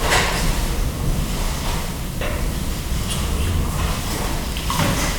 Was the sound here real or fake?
real